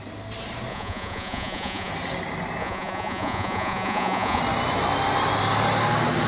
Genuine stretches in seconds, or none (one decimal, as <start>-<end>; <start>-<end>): 0.0-0.7; 1.9-2.6; 4.4-6.3